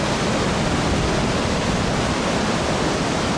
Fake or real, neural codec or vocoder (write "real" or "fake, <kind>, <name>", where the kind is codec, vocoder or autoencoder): real